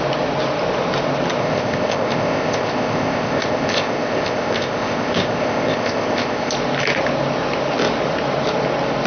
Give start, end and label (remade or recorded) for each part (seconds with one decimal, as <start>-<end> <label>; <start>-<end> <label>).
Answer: 0.0-1.4 recorded; 1.4-6.5 remade; 6.5-9.1 recorded

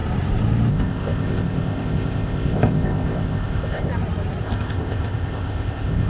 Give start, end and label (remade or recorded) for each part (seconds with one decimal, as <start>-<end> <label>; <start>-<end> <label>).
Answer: 0.0-0.7 recorded; 0.7-3.9 remade; 3.9-4.4 recorded; 4.4-6.1 remade